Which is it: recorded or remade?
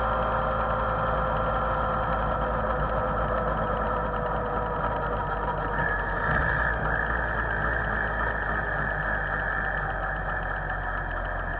recorded